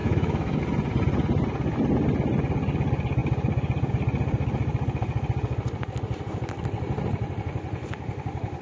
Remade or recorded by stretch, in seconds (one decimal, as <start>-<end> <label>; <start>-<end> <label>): 0.0-0.6 remade; 0.6-8.6 recorded